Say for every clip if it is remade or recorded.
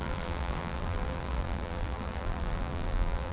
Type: remade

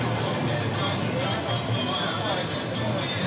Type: recorded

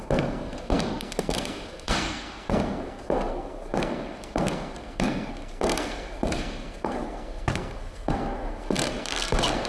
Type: remade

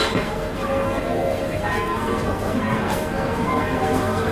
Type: remade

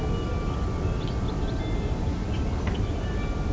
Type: recorded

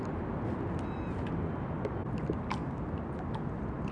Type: recorded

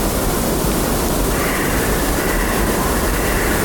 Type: remade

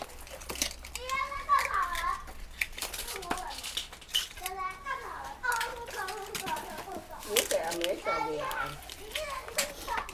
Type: recorded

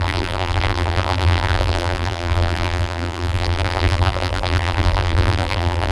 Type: remade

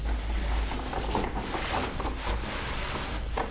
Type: recorded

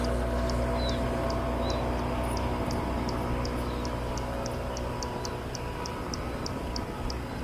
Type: recorded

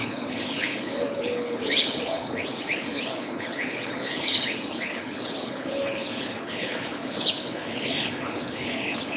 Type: remade